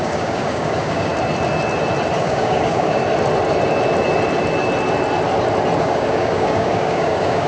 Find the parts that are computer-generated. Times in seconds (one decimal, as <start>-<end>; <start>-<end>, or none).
0.0-1.1; 2.2-3.0; 5.8-7.5